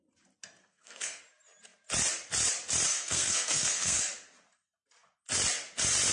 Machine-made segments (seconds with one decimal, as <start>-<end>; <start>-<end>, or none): 0.6-1.2; 2.9-4.0